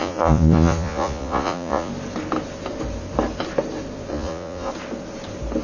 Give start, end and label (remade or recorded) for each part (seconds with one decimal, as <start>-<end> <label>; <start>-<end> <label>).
0.0-1.9 remade; 1.9-4.1 recorded; 4.1-4.7 remade; 4.7-5.6 recorded